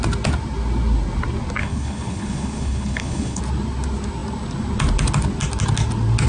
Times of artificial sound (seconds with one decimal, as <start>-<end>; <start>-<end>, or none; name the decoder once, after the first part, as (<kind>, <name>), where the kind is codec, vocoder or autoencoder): 1.6-3.4 (codec, HILCodec)